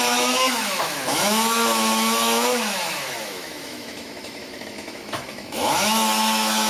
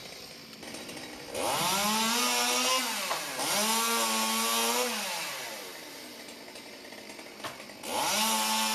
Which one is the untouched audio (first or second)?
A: second